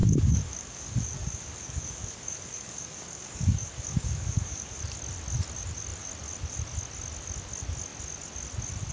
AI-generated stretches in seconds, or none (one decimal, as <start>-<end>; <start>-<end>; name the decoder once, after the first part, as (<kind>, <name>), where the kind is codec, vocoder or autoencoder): 0.0-4.8 (codec, DAC)